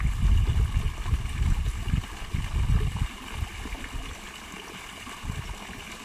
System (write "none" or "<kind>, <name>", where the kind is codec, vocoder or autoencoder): none